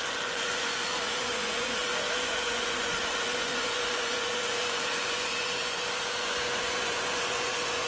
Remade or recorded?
remade